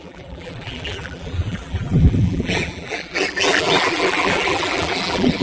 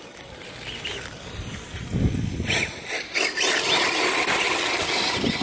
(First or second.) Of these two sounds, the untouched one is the second